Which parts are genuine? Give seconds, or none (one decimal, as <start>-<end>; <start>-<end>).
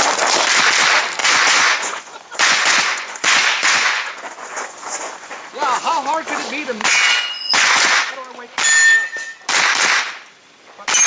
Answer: 0.0-1.2; 5.5-6.8; 8.1-11.1